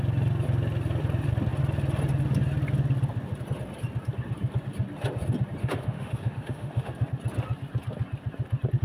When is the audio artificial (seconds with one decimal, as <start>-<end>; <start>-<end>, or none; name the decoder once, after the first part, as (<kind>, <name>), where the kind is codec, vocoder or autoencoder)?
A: 5.6-6.9 (autoencoder, DAC-VAE)